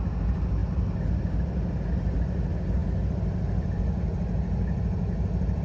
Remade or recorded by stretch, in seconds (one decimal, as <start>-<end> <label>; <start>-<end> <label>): 0.0-5.6 recorded